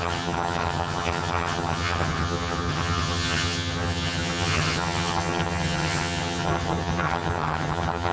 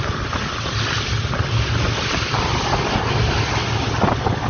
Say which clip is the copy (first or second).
first